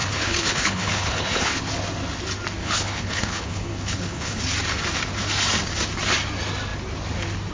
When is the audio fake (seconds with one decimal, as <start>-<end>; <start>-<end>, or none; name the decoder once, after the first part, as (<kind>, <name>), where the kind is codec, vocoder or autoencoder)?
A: 0.0-1.7 (codec, HILCodec); 2.6-4.4